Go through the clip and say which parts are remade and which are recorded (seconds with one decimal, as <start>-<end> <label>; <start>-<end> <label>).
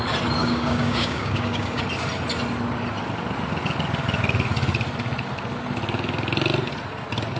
0.0-0.4 recorded; 0.4-1.8 remade; 1.8-7.4 recorded